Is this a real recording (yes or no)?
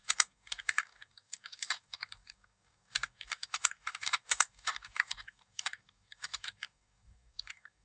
no